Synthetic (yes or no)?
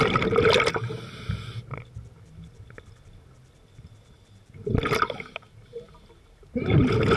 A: no